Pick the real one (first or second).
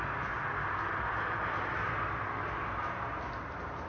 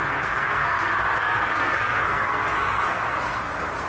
first